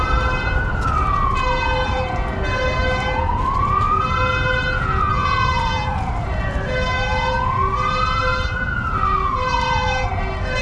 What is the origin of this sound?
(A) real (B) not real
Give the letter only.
A